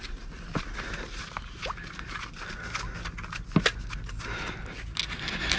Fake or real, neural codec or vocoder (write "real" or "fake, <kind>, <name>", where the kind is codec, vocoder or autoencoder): real